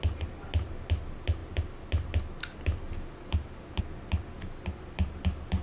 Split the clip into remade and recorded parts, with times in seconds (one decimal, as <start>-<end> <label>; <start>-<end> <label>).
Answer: 0.0-5.6 recorded